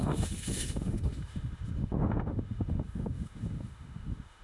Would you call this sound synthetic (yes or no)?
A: yes